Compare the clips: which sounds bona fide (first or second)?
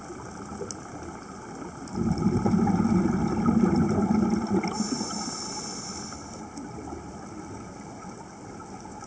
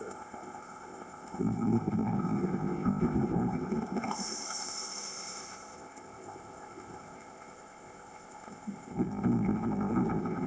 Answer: first